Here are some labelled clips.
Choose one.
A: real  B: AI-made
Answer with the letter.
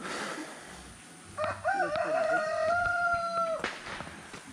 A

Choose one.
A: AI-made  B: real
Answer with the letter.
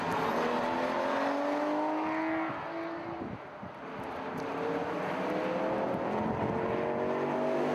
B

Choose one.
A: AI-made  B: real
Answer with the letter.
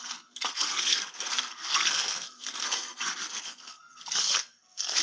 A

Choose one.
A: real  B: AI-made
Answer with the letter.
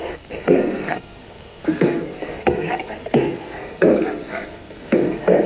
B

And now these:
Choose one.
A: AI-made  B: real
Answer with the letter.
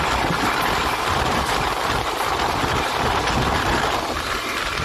B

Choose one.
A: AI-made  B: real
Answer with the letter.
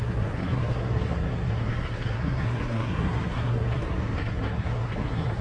A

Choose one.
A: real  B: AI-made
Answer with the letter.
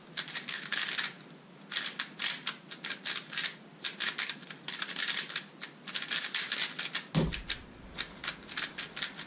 A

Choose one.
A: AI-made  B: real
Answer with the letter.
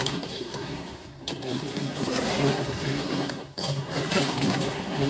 A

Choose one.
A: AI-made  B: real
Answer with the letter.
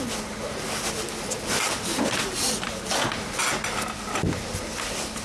B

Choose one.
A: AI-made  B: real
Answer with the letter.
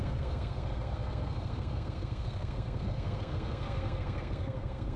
A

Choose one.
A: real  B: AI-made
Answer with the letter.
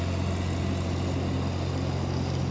A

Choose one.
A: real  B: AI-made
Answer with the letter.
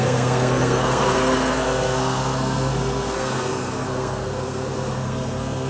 B